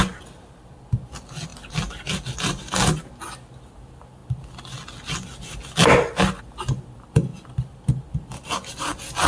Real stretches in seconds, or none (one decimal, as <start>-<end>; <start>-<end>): 0.0-1.5; 2.7-9.3